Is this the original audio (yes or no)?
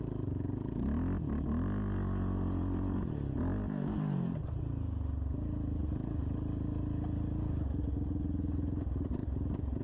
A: yes